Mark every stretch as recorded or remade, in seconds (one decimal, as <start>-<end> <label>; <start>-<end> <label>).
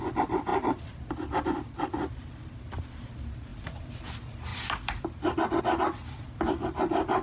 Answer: 0.0-0.5 recorded; 0.5-2.3 remade; 2.3-3.5 recorded; 3.5-4.1 remade; 4.1-4.5 recorded; 4.5-5.6 remade; 5.6-7.2 recorded